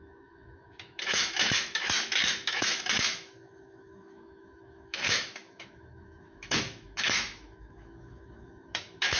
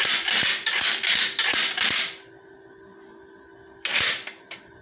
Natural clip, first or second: second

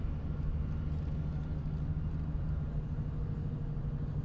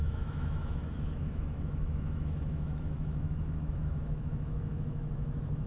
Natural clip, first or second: first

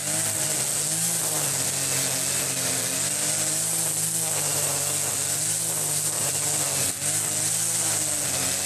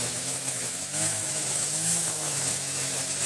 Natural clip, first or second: first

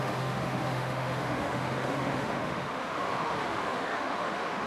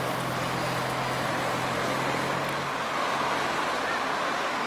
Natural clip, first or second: second